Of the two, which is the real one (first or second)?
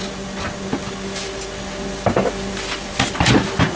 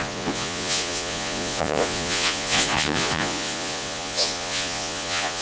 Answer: first